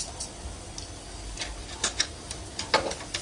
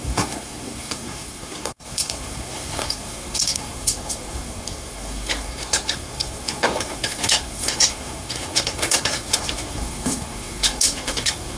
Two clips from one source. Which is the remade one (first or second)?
second